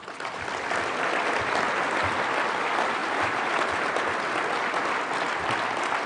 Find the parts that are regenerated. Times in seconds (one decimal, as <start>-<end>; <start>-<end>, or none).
3.0-3.8